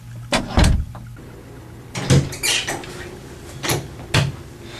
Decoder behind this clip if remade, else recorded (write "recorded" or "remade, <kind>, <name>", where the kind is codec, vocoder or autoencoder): recorded